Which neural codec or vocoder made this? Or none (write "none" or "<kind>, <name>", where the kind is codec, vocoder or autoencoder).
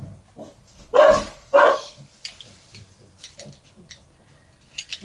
none